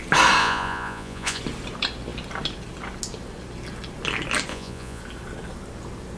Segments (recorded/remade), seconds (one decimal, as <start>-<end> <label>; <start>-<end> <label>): 0.0-0.4 recorded; 0.4-1.4 remade; 1.4-4.5 recorded; 4.5-5.0 remade; 5.0-6.2 recorded